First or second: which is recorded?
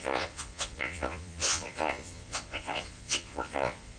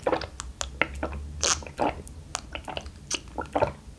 second